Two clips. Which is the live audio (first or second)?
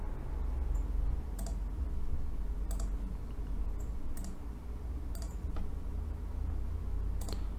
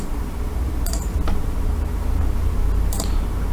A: first